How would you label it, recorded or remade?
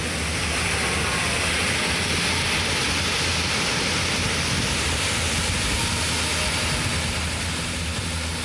recorded